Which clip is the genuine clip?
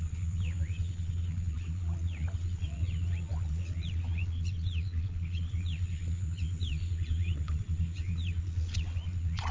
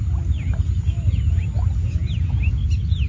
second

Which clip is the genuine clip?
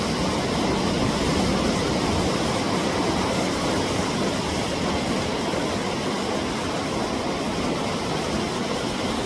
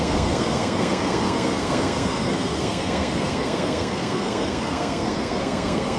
first